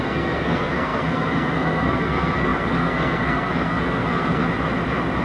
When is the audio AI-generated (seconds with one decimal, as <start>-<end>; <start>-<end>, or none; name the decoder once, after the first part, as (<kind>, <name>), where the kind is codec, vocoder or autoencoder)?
0.0-4.4 (codec, SNAC)